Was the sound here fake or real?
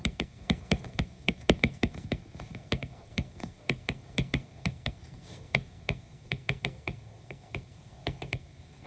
fake